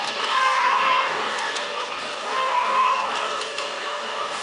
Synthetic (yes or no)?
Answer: yes